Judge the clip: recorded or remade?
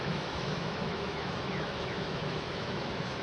remade